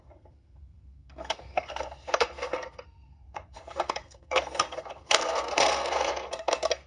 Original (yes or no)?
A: no